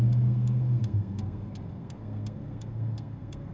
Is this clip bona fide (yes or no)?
no